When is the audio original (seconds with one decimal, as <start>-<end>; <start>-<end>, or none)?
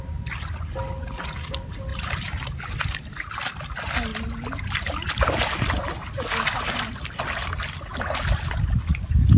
0.0-9.4